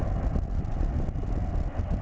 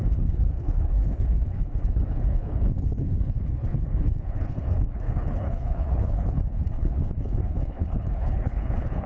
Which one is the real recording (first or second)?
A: first